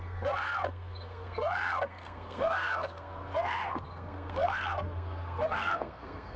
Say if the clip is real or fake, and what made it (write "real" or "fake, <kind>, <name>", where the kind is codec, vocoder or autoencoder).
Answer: fake, codec, SNAC